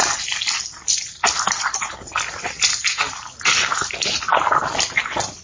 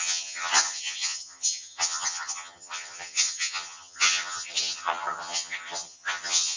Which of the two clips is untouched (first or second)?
first